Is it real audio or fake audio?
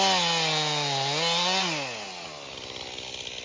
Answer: real